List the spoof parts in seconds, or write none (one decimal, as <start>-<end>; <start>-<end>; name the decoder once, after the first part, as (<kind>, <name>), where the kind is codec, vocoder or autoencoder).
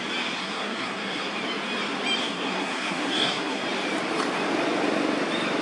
0.4-1.3 (codec, SNAC); 2.2-3.6